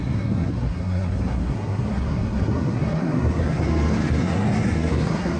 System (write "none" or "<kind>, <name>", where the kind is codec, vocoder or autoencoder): codec, SNAC